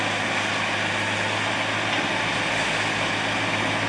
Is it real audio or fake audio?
real